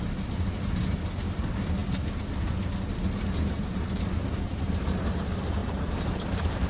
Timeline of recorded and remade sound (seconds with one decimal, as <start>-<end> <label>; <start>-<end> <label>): 0.0-6.7 recorded

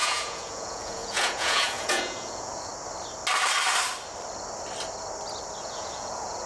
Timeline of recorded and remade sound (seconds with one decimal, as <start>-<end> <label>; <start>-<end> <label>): 0.0-2.7 remade; 2.7-5.6 recorded; 5.6-6.5 remade